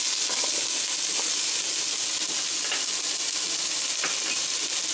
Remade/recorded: recorded